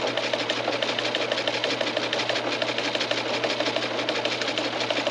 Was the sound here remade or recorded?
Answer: recorded